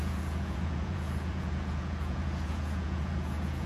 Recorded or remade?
remade